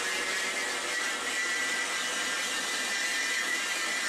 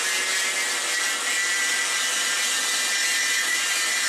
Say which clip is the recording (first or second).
second